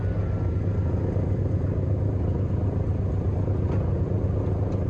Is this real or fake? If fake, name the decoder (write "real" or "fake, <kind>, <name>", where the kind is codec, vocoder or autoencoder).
real